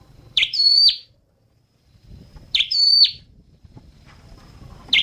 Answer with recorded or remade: remade